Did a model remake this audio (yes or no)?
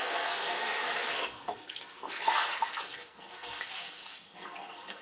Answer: yes